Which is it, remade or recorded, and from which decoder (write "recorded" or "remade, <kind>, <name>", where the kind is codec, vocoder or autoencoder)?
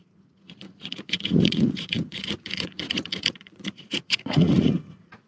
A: remade, vocoder, Vocos